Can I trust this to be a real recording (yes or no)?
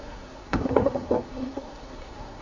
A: no